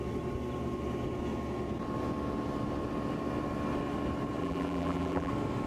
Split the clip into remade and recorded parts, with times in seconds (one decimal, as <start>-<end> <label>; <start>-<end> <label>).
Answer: 0.0-4.4 recorded; 4.4-5.3 remade; 5.3-5.7 recorded